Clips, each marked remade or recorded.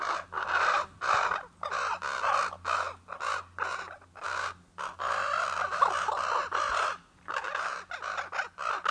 recorded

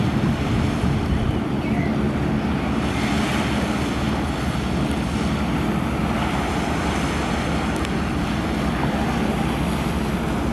recorded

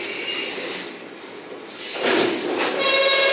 recorded